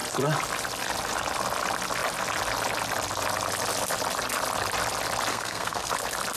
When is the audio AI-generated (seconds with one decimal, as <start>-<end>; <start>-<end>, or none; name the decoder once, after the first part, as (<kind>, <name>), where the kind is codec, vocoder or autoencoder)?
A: 5.3-5.9 (codec, SNAC)

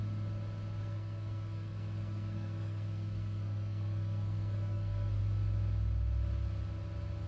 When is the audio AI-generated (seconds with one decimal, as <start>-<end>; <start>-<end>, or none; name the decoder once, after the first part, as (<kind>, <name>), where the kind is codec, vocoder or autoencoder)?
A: 0.8-5.2 (codec, SNAC)